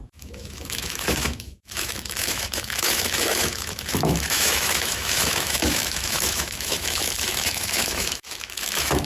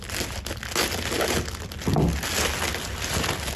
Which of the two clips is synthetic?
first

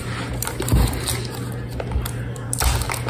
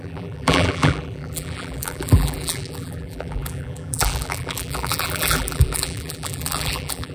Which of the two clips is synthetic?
second